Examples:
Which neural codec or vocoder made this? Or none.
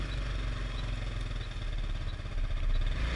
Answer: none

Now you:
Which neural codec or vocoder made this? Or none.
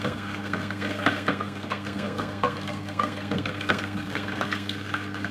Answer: codec, SNAC